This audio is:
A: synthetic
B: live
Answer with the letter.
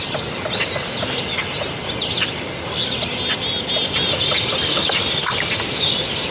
B